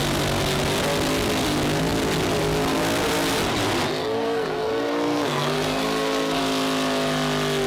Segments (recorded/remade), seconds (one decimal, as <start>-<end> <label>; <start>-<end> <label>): 0.0-4.0 recorded; 4.0-6.4 remade; 6.4-7.7 recorded